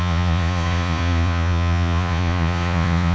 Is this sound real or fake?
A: fake